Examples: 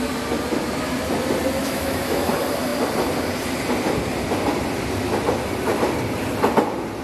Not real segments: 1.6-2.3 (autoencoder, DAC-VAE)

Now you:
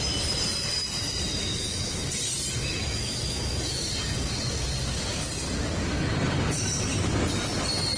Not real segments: 1.4-2.0 (autoencoder, DAC-VAE); 2.6-3.9

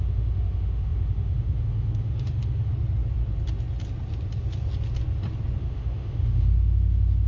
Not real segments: 0.0-2.7 (autoencoder, DAC-VAE); 5.6-7.3

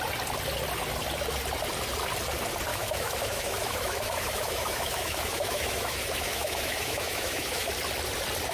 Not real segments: 2.7-7.7 (autoencoder, DAC-VAE)

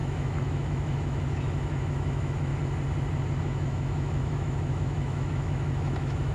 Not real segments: 0.0-2.5 (autoencoder, DAC-VAE); 3.4-6.3

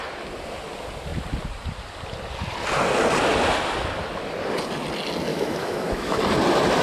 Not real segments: 5.3-6.2 (autoencoder, DAC-VAE)

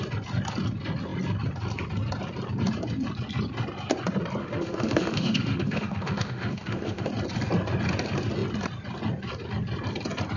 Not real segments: 4.4-7.1 (autoencoder, DAC-VAE)

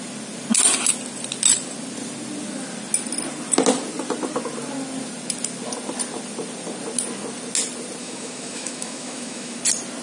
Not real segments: 8.0-9.6 (autoencoder, DAC-VAE)